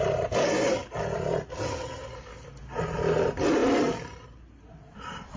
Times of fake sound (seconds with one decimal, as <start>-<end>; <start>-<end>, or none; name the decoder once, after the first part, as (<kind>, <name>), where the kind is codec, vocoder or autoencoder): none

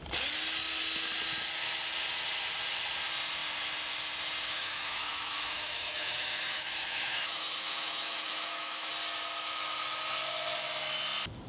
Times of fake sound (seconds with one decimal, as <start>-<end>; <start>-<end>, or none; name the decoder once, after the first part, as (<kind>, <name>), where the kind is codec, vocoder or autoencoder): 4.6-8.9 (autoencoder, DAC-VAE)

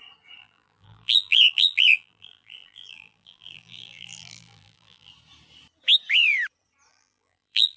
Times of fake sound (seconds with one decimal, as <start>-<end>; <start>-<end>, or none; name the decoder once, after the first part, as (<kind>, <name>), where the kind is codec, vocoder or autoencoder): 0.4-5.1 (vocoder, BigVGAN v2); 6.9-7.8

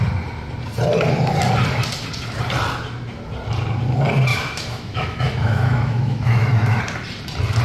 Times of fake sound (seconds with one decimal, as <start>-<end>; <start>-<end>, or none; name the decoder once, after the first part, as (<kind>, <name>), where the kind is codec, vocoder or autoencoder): 4.3-6.8 (autoencoder, DAC-VAE)